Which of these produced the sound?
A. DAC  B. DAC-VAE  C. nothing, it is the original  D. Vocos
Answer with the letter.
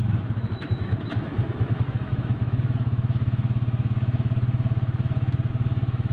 B